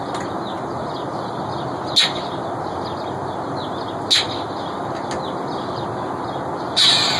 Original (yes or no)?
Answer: yes